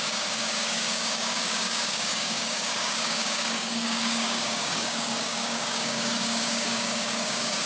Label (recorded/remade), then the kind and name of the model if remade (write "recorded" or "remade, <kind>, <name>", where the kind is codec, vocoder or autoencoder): remade, codec, DAC